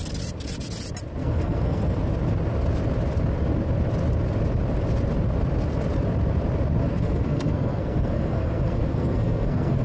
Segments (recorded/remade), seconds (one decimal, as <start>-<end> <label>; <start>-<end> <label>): 0.0-1.2 recorded; 1.2-2.0 remade; 2.0-6.8 recorded; 6.8-9.8 remade